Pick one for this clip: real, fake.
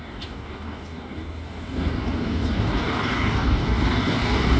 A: fake